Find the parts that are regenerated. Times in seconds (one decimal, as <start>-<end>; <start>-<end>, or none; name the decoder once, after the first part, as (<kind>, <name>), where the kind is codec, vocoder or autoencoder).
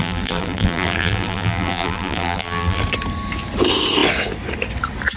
0.0-2.8 (vocoder, BigVGAN v2)